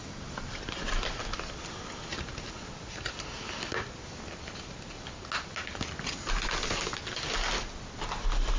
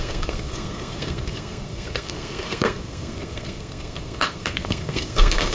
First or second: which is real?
first